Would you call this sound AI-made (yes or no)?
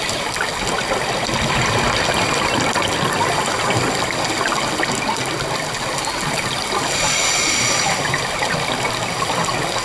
no